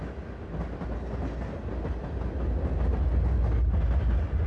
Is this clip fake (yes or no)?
no